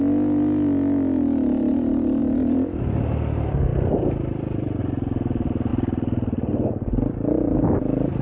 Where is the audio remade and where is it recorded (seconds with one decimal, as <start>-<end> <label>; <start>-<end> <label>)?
0.0-2.2 recorded; 2.2-2.8 remade; 2.8-3.7 recorded; 3.7-4.8 remade; 4.8-8.2 recorded